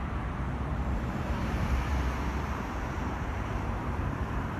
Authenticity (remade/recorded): remade